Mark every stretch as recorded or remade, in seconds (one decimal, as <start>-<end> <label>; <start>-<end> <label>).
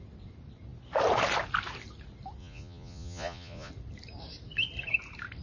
0.0-2.4 recorded; 2.4-3.7 remade; 3.7-5.4 recorded